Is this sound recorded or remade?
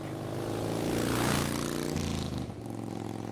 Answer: recorded